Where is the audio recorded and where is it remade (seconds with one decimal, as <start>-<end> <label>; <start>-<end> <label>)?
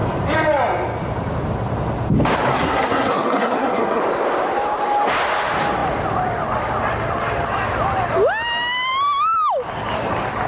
0.0-2.5 recorded; 2.5-4.0 remade; 4.0-10.5 recorded